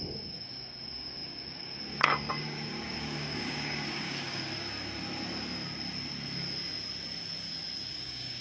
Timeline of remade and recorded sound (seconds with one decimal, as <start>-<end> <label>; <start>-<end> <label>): 0.0-4.4 remade; 4.4-7.9 recorded; 7.9-8.4 remade